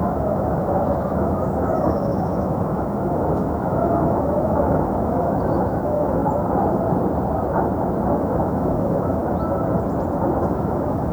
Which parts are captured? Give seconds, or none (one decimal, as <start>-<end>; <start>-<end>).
6.2-8.2; 9.2-10.5